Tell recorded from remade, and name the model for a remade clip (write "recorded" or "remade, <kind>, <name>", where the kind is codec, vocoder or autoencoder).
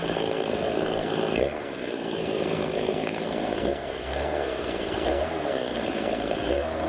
remade, codec, SNAC